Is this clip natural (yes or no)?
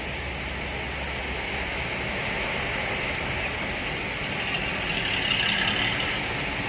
yes